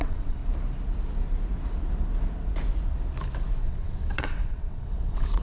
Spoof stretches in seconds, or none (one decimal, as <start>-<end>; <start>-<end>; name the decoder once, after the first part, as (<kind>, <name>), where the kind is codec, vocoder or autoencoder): 0.0-0.4 (vocoder, WaveNeXt); 3.6-5.4